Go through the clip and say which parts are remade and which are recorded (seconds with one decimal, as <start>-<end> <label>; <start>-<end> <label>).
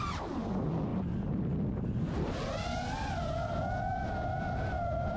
0.0-5.2 recorded